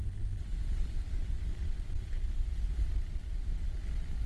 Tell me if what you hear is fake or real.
real